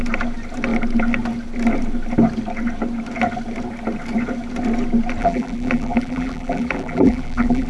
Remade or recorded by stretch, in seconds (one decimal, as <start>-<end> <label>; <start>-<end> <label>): 0.0-5.2 recorded; 5.2-7.7 remade